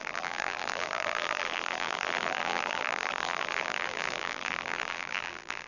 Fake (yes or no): yes